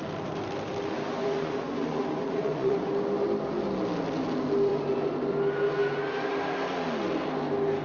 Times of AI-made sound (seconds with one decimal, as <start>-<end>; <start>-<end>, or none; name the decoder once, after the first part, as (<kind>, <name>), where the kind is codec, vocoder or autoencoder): 1.1-2.9 (vocoder, Vocos)